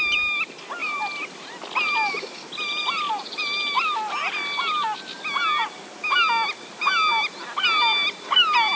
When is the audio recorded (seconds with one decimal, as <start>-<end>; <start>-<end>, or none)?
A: 0.0-8.8